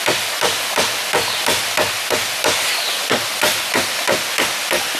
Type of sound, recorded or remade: recorded